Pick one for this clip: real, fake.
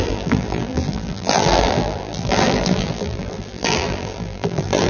fake